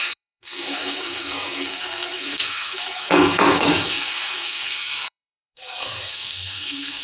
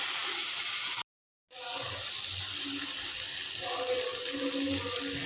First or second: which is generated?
first